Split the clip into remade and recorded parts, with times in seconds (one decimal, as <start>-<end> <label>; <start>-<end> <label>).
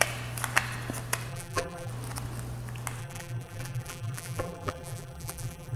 0.0-1.3 recorded; 1.3-1.9 remade; 1.9-3.0 recorded; 3.0-5.8 remade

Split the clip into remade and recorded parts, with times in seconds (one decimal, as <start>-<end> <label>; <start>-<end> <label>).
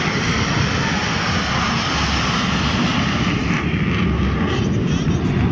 0.0-1.0 remade; 1.0-2.6 recorded; 2.6-3.4 remade; 3.4-4.0 recorded; 4.0-5.5 remade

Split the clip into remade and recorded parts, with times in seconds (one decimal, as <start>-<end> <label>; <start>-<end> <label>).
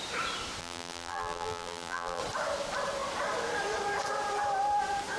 0.0-0.6 recorded; 0.6-2.2 remade; 2.2-5.2 recorded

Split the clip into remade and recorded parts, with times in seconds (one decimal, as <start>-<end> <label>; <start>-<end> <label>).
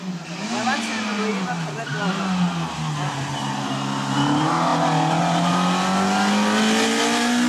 0.0-7.5 recorded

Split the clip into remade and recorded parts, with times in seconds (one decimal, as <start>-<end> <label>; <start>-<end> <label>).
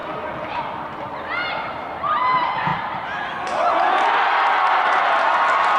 0.0-2.7 recorded; 2.7-3.2 remade; 3.2-5.8 recorded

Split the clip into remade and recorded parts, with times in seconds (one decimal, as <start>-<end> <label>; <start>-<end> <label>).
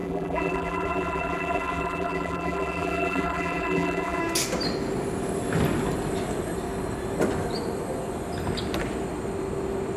0.0-4.2 remade; 4.2-10.0 recorded